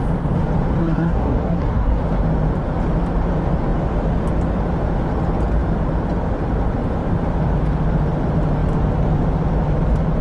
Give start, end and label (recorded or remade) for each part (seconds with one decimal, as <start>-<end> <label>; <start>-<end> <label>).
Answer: 0.0-0.8 recorded; 0.8-2.0 remade; 2.0-10.2 recorded